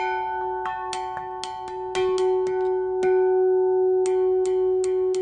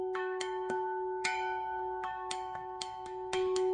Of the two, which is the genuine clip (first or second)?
first